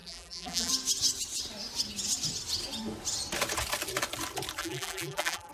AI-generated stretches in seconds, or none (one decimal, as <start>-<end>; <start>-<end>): 0.0-0.7; 4.6-5.5